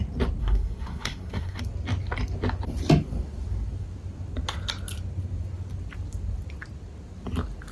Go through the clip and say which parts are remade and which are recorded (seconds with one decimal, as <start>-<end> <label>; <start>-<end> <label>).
0.0-0.4 recorded; 0.4-1.6 remade; 1.6-7.7 recorded